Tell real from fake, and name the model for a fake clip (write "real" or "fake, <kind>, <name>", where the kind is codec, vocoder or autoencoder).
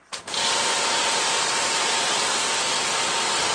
real